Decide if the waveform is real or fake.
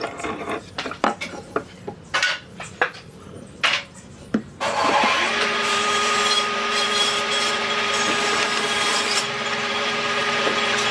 fake